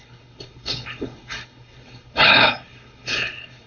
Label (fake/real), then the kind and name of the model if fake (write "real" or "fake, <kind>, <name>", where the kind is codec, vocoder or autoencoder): fake, codec, HILCodec